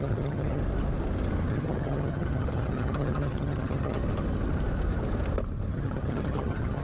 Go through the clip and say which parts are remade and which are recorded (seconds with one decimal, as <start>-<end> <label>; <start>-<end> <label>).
0.0-0.6 remade; 0.6-1.5 recorded; 1.5-4.0 remade; 4.0-5.7 recorded; 5.7-6.8 remade